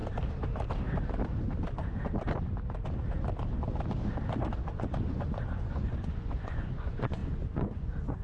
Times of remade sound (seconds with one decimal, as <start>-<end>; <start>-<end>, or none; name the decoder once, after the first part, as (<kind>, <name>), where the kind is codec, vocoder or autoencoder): 4.6-8.2 (vocoder, Vocos)